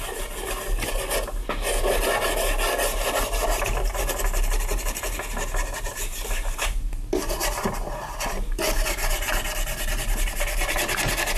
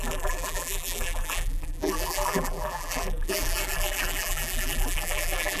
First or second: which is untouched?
first